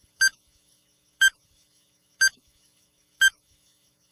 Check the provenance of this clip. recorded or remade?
remade